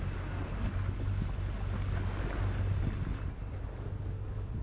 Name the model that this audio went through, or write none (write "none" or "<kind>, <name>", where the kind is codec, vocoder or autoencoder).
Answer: none